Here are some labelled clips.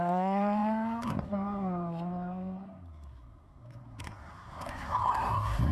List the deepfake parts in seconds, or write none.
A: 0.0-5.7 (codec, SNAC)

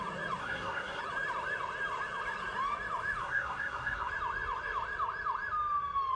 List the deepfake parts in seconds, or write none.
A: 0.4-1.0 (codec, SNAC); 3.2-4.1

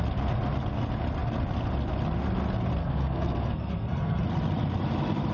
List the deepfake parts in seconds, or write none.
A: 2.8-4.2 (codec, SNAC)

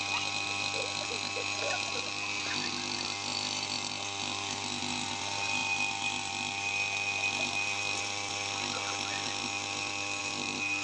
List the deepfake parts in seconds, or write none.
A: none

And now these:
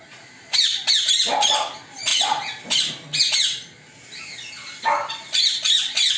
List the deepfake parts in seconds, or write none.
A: none

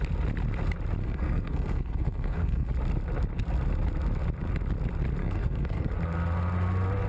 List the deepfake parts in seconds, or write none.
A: 1.0-2.7 (codec, SNAC); 5.2-5.9